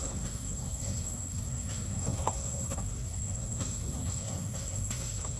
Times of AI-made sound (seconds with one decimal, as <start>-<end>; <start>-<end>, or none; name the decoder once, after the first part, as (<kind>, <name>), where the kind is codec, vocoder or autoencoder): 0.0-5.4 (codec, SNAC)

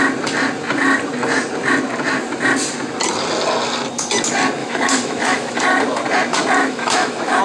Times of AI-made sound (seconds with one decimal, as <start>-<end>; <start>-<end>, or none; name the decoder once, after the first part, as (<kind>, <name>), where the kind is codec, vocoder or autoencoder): 4.6-5.6 (autoencoder, DAC-VAE); 6.6-7.4

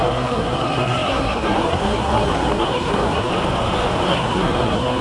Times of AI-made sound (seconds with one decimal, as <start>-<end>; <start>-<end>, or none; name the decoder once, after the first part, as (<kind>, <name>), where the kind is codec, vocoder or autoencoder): 0.0-3.3 (codec, SNAC); 4.1-5.0